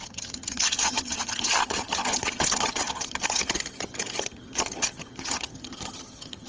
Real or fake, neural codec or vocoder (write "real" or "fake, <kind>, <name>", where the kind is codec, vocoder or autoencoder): fake, vocoder, HiFi-GAN